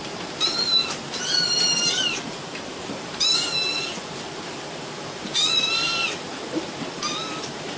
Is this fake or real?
fake